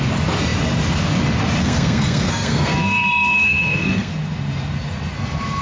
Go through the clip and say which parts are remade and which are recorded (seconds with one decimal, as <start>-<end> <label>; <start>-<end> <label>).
0.0-1.6 recorded; 1.6-4.1 remade; 4.1-5.6 recorded